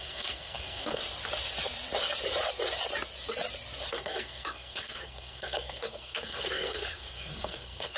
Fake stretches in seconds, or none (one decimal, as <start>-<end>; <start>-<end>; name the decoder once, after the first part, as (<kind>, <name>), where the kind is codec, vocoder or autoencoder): 0.0-1.0 (codec, SNAC); 3.9-8.0